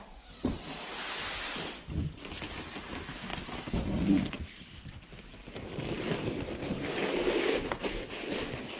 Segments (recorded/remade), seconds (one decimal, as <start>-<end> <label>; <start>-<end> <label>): 0.0-8.8 recorded